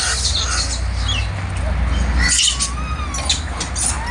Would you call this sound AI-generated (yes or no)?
no